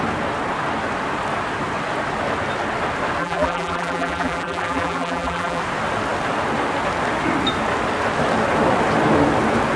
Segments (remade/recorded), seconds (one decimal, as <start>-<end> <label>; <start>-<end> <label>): 0.0-3.2 recorded; 3.2-5.6 remade; 5.6-9.8 recorded